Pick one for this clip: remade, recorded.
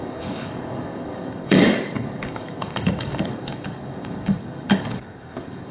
remade